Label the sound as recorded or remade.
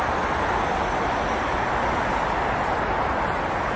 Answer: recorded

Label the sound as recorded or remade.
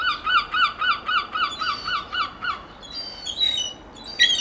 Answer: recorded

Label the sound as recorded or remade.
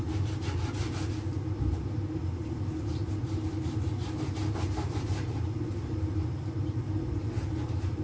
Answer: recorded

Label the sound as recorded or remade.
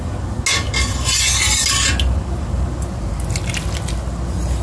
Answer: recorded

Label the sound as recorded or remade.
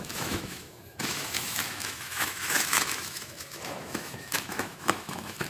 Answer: remade